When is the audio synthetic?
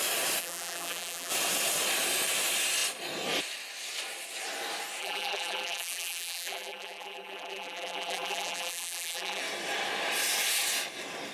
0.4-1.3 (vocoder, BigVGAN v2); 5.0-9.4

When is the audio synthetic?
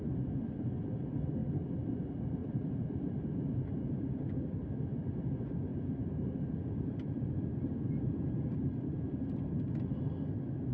2.4-4.3 (vocoder, BigVGAN v2); 5.7-9.7